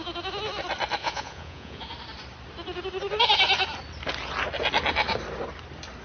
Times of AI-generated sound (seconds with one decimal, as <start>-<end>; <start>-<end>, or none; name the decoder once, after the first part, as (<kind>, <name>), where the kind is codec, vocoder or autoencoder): 1.0-1.8 (vocoder, Vocos)

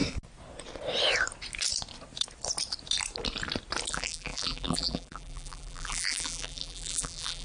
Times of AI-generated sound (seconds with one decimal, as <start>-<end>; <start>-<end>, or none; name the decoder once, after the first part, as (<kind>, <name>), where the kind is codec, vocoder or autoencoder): 3.9-7.4 (vocoder, BigVGAN v2)